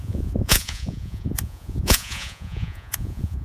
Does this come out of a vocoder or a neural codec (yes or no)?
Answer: yes